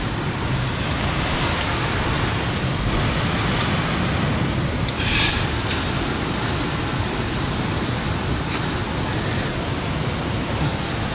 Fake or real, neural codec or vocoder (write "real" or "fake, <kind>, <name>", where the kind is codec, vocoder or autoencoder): real